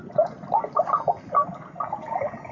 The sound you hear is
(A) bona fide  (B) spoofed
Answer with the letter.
A